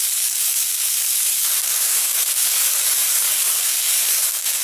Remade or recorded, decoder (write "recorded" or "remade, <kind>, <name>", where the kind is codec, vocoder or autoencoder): remade, codec, DAC